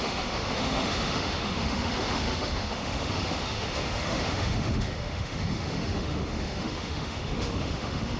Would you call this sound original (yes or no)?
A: no